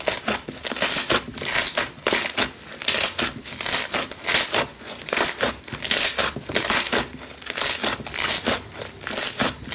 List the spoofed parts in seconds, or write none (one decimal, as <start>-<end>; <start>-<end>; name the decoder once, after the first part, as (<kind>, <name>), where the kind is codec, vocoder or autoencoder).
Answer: 4.7-5.2 (vocoder, Vocos)